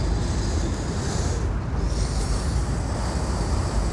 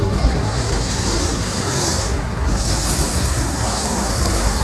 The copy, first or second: second